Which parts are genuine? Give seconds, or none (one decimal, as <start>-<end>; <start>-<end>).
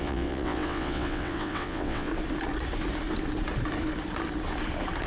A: 2.1-5.1